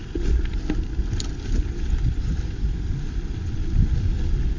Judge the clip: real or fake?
real